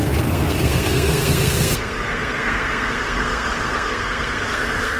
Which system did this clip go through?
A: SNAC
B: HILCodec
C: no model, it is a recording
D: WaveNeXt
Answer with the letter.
A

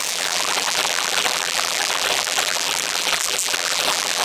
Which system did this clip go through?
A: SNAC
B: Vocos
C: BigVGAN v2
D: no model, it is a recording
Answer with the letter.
C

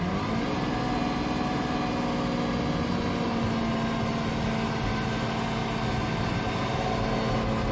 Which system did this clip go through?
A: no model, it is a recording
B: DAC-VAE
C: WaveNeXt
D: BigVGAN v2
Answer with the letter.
A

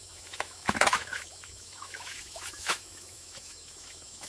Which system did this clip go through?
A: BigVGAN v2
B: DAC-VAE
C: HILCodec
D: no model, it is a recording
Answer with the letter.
B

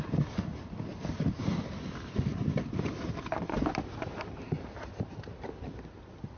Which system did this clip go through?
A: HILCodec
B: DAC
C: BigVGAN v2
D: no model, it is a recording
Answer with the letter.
D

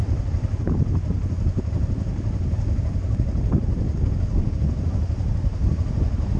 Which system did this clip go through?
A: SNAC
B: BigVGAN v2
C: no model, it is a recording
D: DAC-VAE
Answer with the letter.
C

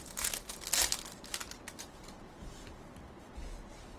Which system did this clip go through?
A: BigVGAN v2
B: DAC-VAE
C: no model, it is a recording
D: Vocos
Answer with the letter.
C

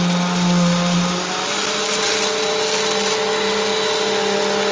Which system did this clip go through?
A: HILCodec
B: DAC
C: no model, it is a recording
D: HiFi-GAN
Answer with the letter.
C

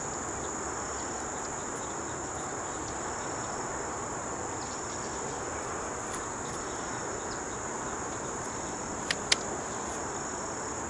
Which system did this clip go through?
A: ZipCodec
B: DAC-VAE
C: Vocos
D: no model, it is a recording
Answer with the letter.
D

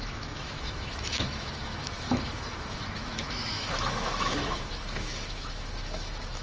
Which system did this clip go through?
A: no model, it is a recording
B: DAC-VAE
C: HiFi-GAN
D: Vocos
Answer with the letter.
B